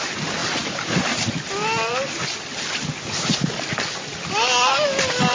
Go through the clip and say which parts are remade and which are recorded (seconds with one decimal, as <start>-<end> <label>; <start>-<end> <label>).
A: 0.0-5.3 recorded